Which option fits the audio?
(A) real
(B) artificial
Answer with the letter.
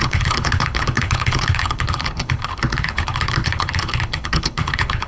B